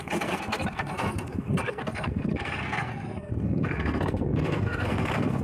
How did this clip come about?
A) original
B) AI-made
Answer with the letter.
B